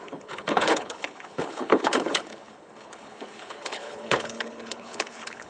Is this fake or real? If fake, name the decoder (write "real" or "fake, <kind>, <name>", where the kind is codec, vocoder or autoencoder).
fake, codec, HILCodec